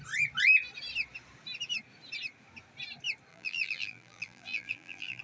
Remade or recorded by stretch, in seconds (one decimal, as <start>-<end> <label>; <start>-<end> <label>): 0.0-3.3 recorded; 3.3-5.2 remade